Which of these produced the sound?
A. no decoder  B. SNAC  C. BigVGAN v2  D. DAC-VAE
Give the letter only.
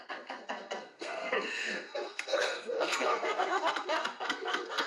B